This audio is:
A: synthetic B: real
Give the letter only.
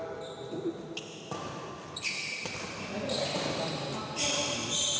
B